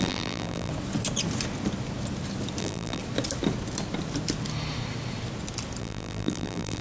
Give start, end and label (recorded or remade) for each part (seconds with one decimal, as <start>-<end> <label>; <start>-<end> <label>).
0.0-0.7 remade; 0.7-2.6 recorded; 2.6-3.0 remade; 3.0-5.8 recorded; 5.8-6.8 remade